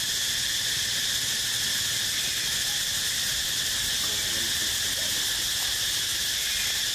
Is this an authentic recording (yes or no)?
yes